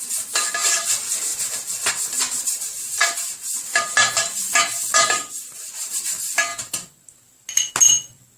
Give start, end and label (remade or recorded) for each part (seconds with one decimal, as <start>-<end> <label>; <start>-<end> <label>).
0.0-8.4 recorded